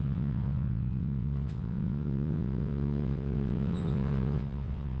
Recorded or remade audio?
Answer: remade